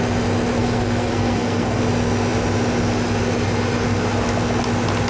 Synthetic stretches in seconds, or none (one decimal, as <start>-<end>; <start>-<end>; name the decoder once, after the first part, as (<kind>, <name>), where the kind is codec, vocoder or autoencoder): 0.6-1.8 (codec, SNAC)